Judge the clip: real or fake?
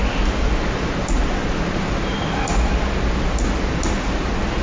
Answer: real